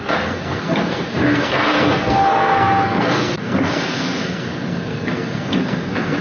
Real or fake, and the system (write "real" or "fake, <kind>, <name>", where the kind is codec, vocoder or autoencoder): fake, codec, SNAC